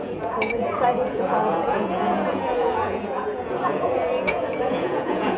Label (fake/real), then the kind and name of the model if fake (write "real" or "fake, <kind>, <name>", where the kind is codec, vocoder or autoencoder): fake, vocoder, Vocos